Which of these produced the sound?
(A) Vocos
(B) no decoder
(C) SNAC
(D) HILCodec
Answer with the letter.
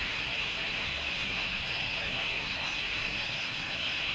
C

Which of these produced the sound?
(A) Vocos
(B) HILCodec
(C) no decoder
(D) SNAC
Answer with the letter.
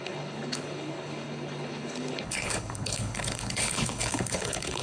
B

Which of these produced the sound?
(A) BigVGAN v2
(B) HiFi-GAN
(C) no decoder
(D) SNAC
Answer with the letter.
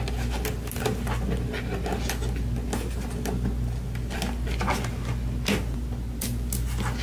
C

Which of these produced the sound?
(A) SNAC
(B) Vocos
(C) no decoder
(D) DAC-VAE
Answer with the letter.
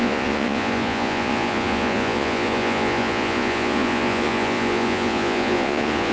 B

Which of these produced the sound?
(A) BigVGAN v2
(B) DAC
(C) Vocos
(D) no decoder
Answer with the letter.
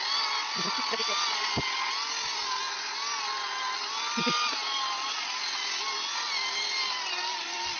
D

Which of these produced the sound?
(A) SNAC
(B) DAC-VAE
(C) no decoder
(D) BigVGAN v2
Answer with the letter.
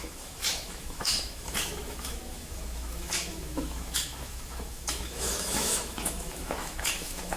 B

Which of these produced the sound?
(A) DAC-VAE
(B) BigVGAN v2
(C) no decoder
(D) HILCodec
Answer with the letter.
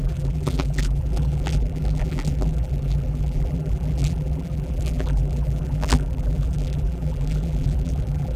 B